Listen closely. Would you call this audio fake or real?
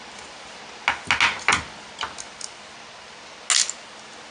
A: real